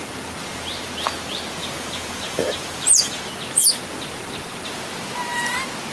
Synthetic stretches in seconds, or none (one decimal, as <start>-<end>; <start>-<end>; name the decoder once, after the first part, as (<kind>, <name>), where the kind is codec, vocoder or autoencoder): 1.6-3.2 (vocoder, Vocos)